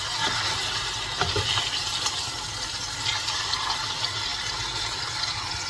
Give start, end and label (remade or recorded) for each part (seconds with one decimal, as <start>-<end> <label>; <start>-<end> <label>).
0.0-5.7 recorded